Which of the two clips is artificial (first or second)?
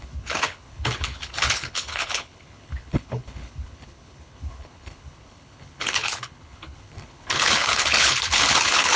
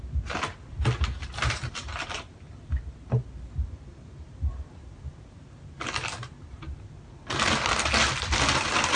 first